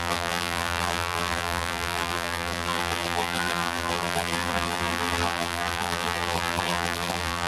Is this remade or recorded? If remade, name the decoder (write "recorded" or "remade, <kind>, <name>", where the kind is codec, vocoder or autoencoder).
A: remade, vocoder, BigVGAN v2